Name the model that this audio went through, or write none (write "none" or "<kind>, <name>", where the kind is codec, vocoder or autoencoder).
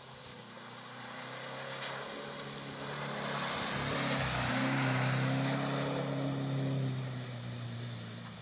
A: none